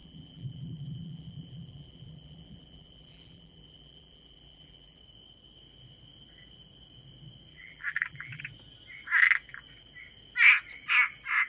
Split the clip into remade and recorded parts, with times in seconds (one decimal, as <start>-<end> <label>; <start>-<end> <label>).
0.0-5.0 remade; 5.0-7.5 recorded; 7.5-8.4 remade; 8.4-11.5 recorded